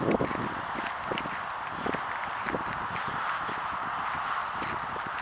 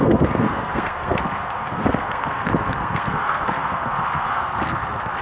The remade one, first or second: second